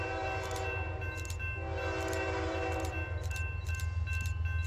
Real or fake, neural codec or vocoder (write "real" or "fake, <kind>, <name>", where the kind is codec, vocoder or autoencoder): real